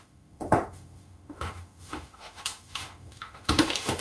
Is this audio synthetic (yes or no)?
yes